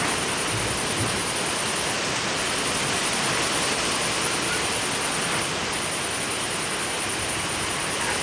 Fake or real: real